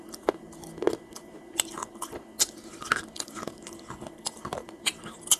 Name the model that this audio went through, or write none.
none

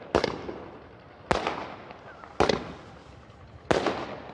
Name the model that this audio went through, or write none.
none